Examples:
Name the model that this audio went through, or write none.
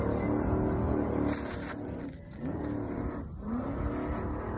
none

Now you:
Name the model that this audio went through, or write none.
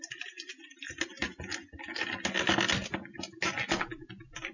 none